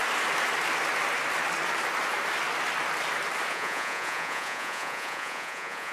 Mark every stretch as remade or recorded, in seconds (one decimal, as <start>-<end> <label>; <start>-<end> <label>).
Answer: 0.0-3.5 recorded; 3.5-5.9 remade